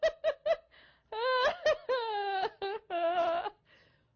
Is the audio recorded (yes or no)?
yes